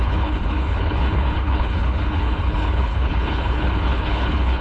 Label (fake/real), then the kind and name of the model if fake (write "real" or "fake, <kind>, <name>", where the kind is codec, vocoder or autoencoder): fake, codec, HILCodec